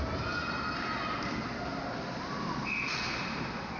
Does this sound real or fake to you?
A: real